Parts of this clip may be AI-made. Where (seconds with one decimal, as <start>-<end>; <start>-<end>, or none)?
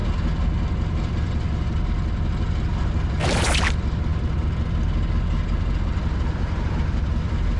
none